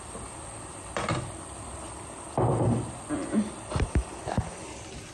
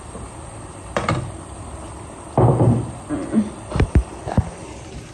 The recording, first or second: first